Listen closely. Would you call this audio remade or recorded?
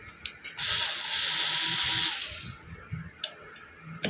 recorded